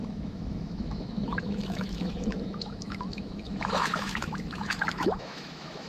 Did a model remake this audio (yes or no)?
yes